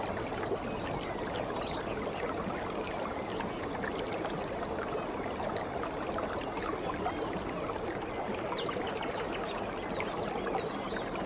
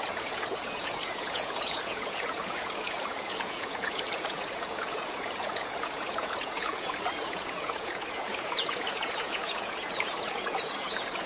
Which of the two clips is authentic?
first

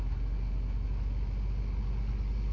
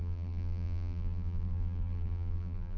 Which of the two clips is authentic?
first